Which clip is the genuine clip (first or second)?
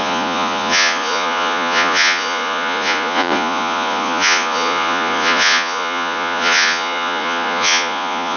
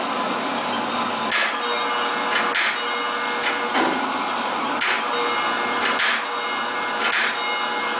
second